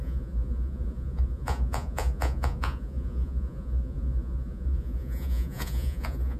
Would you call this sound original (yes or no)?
no